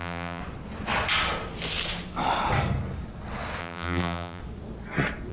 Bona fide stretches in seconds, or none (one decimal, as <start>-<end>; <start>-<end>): 0.4-3.6; 4.4-5.3